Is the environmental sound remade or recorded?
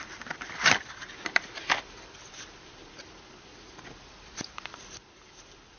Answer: remade